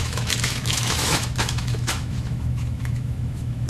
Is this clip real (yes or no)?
no